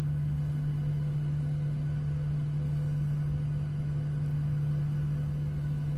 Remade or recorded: recorded